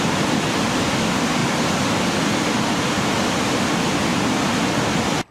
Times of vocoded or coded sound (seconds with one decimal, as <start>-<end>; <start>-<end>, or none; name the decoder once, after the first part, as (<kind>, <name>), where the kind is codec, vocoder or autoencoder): none

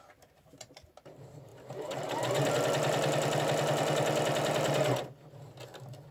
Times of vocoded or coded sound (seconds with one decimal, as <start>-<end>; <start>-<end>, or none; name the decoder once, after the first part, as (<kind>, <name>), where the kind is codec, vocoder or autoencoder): none